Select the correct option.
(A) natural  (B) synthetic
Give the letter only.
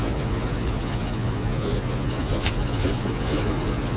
B